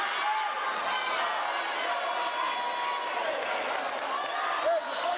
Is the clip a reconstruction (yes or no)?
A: no